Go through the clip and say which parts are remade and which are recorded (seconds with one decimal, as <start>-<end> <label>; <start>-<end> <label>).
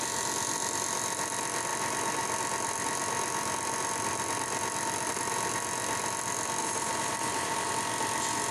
0.0-6.6 recorded; 6.6-7.7 remade; 7.7-8.5 recorded